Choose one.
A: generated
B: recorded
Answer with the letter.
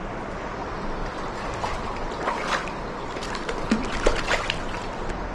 B